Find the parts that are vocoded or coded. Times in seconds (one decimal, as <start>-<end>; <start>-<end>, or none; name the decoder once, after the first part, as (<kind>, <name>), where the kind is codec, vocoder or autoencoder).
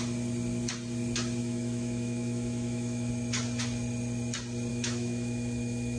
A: 1.4-3.1 (autoencoder, DAC-VAE); 4.7-6.0